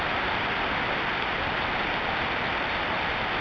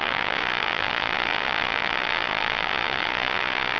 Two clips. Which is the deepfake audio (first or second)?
second